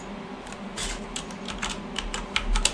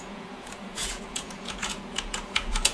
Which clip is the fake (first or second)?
second